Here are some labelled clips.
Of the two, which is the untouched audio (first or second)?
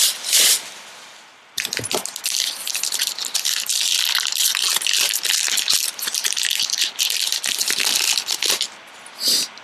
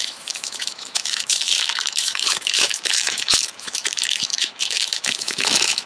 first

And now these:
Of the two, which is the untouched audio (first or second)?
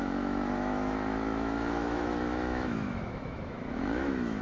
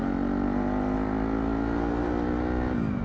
second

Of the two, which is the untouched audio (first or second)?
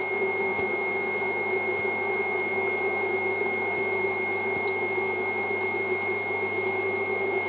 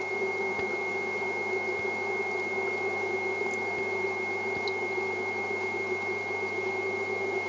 second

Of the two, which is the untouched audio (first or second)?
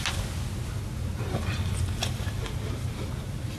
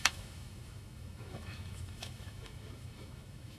first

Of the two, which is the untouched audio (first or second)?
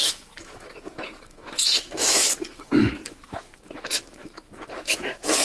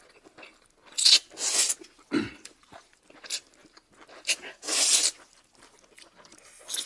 second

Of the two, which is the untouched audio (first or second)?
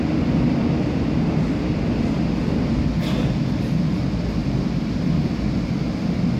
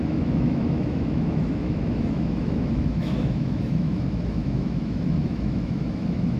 first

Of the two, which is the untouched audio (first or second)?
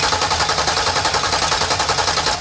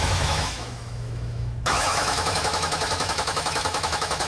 first